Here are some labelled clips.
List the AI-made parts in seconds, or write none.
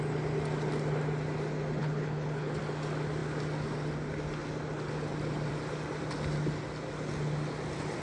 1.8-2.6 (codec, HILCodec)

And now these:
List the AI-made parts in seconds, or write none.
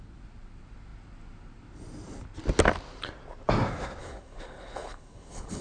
4.0-5.6 (codec, HILCodec)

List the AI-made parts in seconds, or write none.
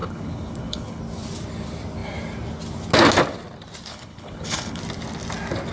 0.0-1.0 (codec, HILCodec); 3.9-4.8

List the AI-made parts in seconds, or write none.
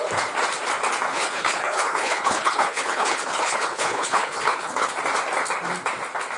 1.1-4.9 (codec, HILCodec)